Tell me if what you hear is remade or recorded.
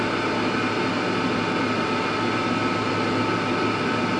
recorded